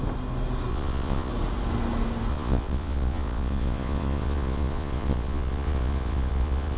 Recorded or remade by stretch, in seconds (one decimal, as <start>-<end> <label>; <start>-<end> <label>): 0.0-0.7 recorded; 0.7-1.3 remade; 1.3-2.3 recorded; 2.3-6.8 remade